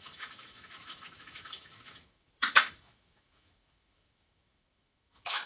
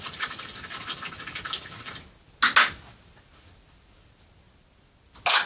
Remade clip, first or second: first